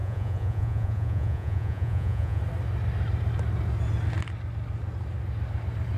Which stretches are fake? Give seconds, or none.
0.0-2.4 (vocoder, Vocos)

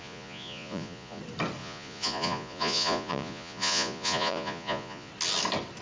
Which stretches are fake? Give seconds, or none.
0.0-1.2 (vocoder, Vocos); 1.6-5.1

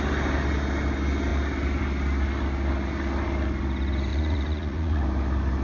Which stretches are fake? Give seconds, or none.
4.1-5.0 (vocoder, Vocos)